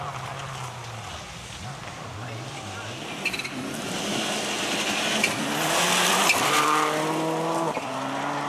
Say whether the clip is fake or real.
real